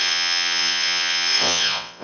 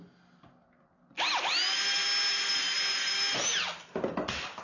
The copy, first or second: first